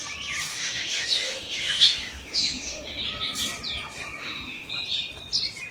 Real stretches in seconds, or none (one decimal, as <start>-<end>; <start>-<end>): 0.0-0.5; 3.0-4.2; 4.7-5.7